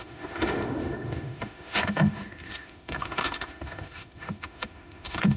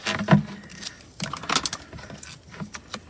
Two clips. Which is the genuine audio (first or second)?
second